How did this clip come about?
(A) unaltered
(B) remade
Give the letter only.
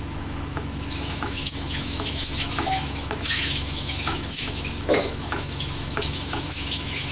B